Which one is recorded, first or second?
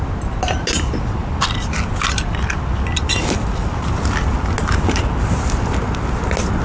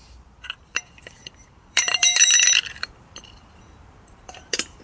first